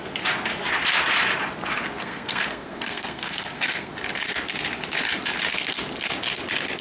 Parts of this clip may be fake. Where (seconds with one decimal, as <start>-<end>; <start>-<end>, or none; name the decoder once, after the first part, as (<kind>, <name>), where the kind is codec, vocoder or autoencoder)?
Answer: 1.8-3.9 (codec, SNAC)